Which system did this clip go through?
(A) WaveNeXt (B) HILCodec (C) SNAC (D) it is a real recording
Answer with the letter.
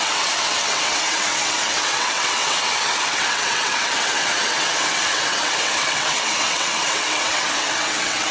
A